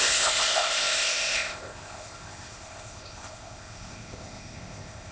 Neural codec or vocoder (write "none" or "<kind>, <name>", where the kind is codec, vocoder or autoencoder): codec, ZipCodec